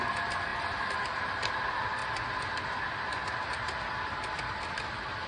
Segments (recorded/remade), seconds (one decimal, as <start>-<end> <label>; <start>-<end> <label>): 0.0-5.3 recorded